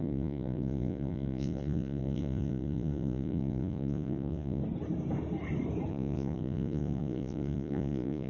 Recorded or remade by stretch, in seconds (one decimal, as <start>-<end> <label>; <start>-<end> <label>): 0.0-4.6 remade; 4.6-5.9 recorded; 5.9-8.3 remade